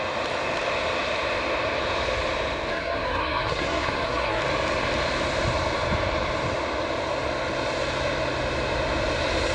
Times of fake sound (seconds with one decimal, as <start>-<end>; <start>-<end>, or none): 2.7-4.4